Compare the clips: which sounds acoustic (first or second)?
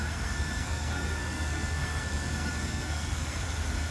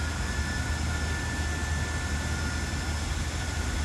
second